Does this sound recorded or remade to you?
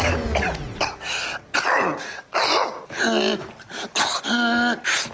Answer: recorded